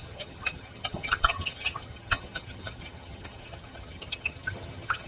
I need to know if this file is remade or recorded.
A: remade